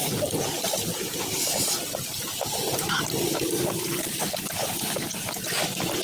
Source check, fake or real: fake